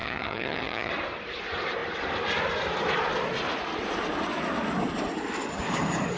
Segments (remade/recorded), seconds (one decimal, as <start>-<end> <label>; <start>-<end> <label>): 0.0-0.9 remade; 0.9-6.2 recorded